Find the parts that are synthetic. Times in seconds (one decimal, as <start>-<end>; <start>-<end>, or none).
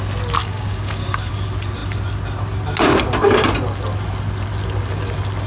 0.4-1.3